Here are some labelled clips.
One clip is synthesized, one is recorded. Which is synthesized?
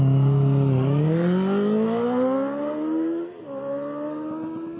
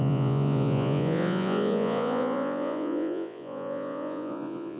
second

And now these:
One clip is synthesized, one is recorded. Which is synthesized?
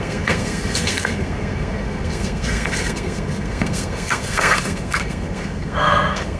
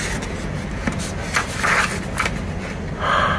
first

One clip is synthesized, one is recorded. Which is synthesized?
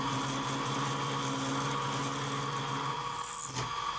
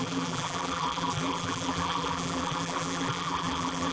second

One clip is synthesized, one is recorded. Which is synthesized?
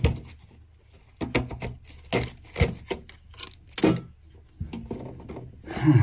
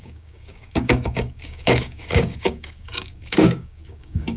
second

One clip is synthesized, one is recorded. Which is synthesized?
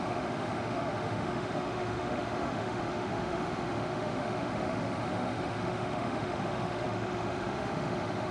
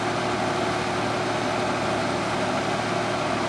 first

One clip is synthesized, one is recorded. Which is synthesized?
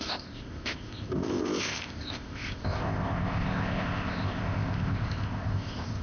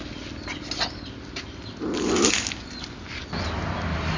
first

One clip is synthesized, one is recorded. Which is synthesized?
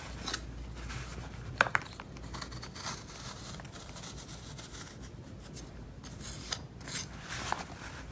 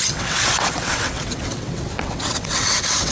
second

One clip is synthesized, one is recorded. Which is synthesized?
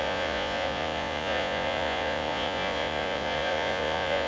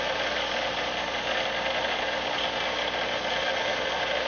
first